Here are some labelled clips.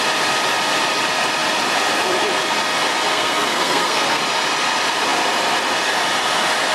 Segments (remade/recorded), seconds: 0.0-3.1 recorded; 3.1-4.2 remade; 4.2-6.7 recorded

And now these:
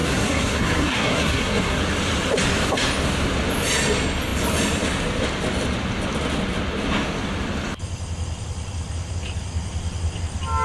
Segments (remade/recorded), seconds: 0.0-1.8 remade; 1.8-10.6 recorded

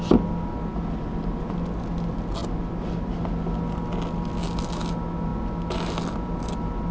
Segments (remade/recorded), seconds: 0.0-6.9 recorded

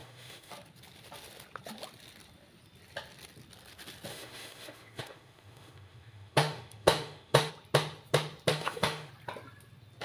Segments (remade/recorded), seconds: 0.0-0.5 remade; 0.5-4.1 recorded; 4.1-7.5 remade; 7.5-8.5 recorded; 8.5-9.1 remade; 9.1-10.0 recorded

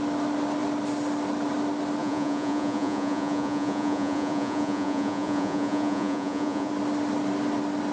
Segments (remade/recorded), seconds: 0.0-2.0 recorded; 2.0-6.7 remade; 6.7-7.9 recorded